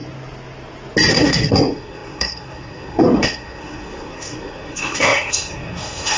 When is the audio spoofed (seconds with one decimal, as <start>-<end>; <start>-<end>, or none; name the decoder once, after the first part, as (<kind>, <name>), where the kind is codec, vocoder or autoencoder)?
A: 1.1-6.2 (codec, SNAC)

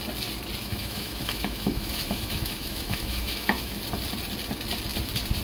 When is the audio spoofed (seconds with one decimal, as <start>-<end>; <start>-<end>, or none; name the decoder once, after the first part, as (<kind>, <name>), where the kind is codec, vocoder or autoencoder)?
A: 0.6-3.8 (autoencoder, DAC-VAE)

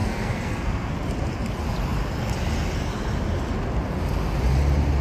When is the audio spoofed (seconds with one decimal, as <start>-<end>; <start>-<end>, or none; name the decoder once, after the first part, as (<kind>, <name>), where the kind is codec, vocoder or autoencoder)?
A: 0.0-0.9 (codec, SNAC)

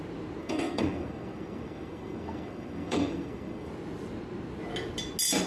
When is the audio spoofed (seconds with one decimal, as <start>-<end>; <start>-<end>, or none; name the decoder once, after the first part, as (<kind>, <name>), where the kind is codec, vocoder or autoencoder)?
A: 0.4-3.7 (codec, SNAC)

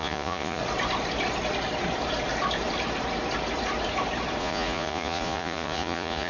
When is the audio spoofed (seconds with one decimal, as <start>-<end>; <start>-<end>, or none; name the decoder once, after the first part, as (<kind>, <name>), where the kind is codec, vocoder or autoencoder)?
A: 0.0-0.6 (vocoder, Vocos); 4.4-6.3

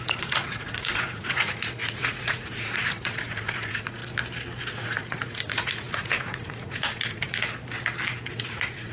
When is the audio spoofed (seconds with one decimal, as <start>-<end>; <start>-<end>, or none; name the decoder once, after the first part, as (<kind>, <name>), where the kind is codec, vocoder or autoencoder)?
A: 0.0-4.0 (vocoder, Vocos); 4.7-7.4; 8.3-8.9